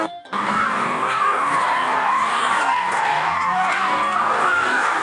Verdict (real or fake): fake